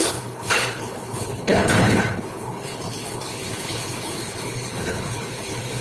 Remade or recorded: remade